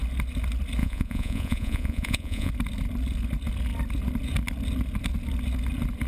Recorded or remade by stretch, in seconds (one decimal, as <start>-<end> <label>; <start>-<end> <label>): 0.0-0.8 recorded; 0.8-2.5 remade; 2.5-6.1 recorded